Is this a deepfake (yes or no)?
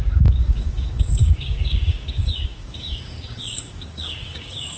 yes